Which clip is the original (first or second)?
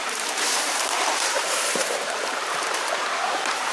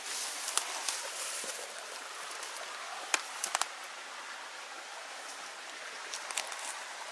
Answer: second